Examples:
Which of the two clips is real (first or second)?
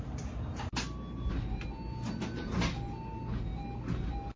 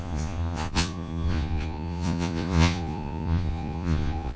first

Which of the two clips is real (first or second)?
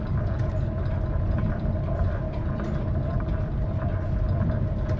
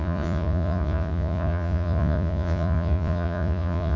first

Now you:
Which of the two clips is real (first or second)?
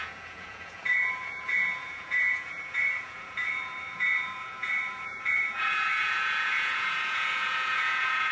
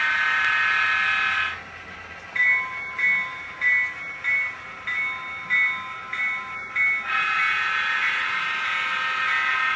second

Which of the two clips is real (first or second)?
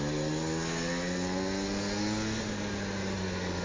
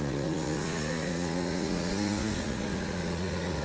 first